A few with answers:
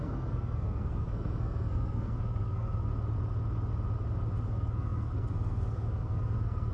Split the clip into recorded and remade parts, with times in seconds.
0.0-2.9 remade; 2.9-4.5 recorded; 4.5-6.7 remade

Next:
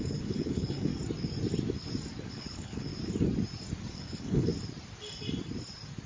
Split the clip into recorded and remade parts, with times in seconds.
0.0-0.9 remade; 0.9-2.3 recorded; 2.3-2.9 remade; 2.9-3.9 recorded; 3.9-4.5 remade; 4.5-6.1 recorded

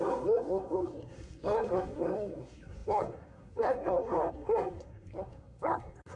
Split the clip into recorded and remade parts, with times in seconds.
0.0-6.2 remade

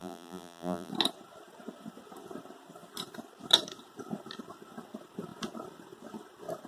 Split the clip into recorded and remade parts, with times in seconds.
0.0-0.9 remade; 0.9-6.7 recorded

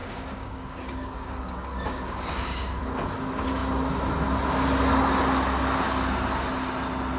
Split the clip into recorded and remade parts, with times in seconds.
0.0-2.8 remade; 2.8-7.2 recorded

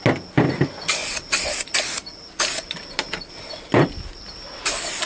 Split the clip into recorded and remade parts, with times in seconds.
0.0-1.0 recorded; 1.0-3.4 remade; 3.4-5.1 recorded